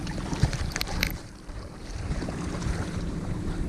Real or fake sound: fake